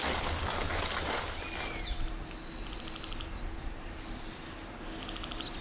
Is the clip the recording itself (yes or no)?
yes